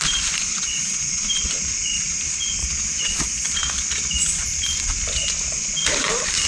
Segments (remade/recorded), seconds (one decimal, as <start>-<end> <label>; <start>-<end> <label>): 0.0-0.5 recorded; 0.5-1.1 remade; 1.1-2.6 recorded; 2.6-4.1 remade; 4.1-6.5 recorded